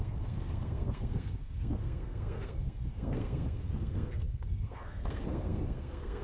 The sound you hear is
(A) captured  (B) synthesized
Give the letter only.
B